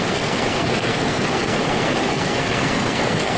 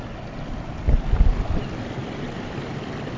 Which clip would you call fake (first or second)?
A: first